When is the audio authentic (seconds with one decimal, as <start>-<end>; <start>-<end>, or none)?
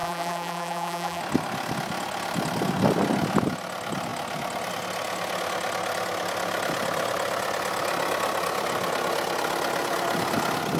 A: 1.2-10.8